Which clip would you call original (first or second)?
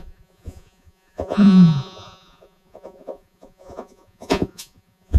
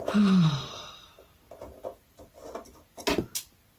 second